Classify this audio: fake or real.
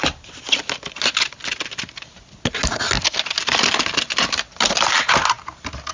real